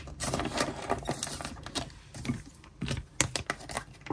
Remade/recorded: recorded